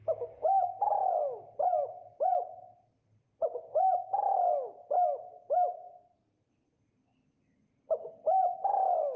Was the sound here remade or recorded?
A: recorded